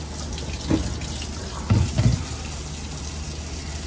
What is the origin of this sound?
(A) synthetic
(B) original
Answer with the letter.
B